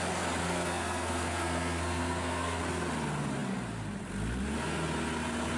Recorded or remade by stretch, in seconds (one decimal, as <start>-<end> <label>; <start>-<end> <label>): 0.0-0.4 recorded; 0.4-2.6 remade; 2.6-5.6 recorded